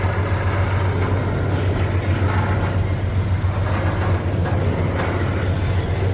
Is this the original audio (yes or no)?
yes